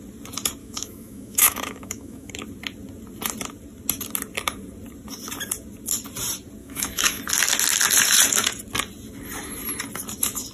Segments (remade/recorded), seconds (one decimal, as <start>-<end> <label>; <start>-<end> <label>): 0.0-0.6 recorded; 0.6-2.3 remade; 2.3-6.6 recorded; 6.6-7.2 remade; 7.2-10.5 recorded